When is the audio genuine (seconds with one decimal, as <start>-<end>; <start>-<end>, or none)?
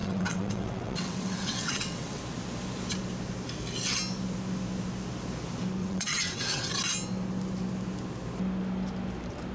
2.2-5.8; 6.7-9.5